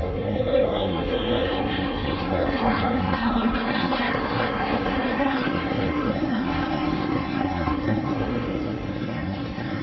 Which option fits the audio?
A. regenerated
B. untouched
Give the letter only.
A